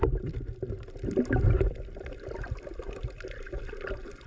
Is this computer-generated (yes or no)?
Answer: no